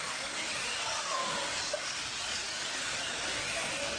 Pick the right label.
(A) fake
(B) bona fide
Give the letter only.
A